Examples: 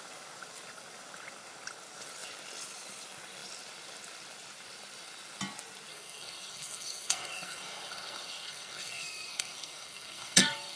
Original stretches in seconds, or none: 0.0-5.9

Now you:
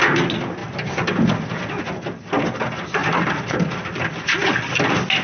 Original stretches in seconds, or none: 0.0-5.2